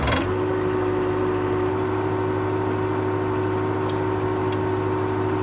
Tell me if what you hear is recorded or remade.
recorded